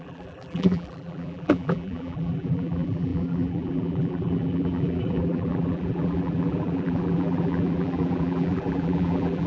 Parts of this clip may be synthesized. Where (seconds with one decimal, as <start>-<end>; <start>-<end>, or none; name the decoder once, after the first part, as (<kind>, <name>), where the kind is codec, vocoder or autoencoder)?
0.0-9.5 (vocoder, BigVGAN v2)